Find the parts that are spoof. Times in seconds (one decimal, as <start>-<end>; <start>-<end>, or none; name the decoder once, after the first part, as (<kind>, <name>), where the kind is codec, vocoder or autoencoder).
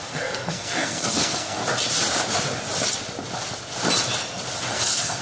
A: 0.0-1.6 (codec, SNAC); 4.7-5.2